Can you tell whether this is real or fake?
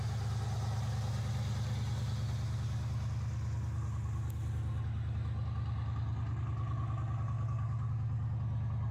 real